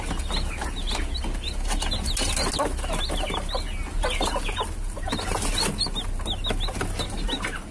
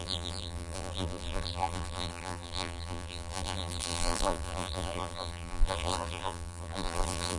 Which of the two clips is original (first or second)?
first